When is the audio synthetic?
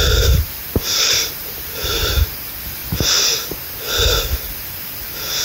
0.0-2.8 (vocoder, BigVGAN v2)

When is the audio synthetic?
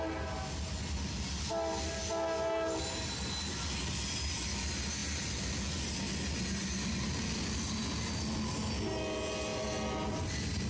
none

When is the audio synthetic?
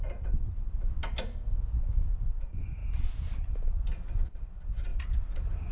2.8-3.9 (vocoder, BigVGAN v2); 4.9-5.7